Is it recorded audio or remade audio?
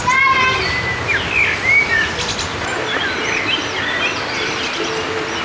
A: recorded